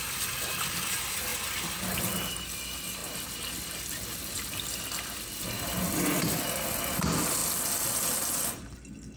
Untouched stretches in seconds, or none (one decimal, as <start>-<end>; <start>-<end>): 0.0-9.2